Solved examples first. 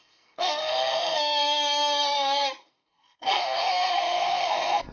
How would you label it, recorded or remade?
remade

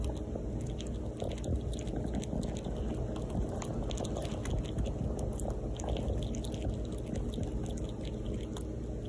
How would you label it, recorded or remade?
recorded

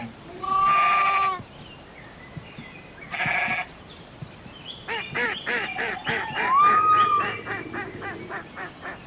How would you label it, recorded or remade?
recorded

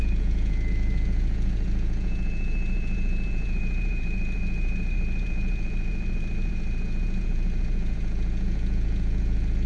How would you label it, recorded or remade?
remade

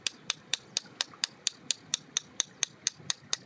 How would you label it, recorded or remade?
recorded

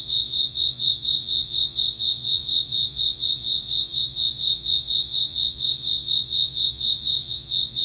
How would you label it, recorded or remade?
remade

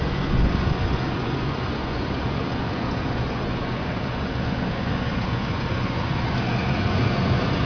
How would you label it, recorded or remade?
remade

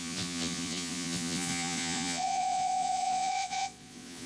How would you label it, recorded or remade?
remade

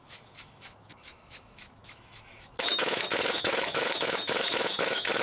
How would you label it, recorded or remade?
remade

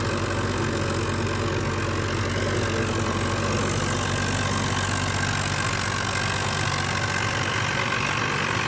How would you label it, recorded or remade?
recorded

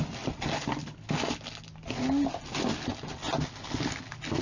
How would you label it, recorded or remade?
recorded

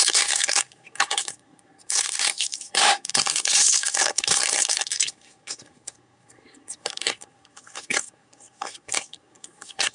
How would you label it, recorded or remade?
remade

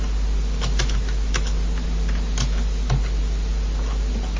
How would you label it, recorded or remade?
recorded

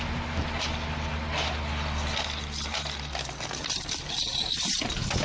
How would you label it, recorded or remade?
recorded